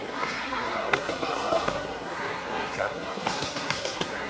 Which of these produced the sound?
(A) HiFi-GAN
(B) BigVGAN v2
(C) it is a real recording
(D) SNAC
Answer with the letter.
D